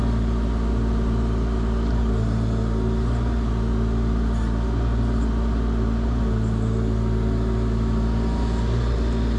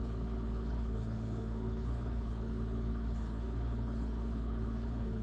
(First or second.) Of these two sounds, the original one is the first